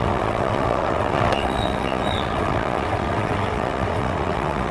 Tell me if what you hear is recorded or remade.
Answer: remade